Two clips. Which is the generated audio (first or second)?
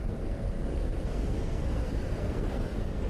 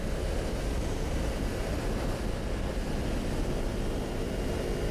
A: first